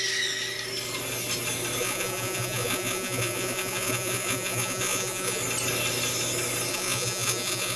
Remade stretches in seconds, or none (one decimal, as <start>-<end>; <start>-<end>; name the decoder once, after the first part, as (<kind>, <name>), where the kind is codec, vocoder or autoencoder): 1.8-5.4 (vocoder, Vocos); 6.7-7.8